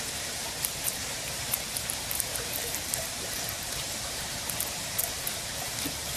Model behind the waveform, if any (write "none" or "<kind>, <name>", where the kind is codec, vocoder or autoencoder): vocoder, BigVGAN v2